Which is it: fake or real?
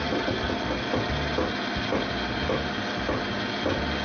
real